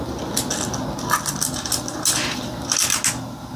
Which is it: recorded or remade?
recorded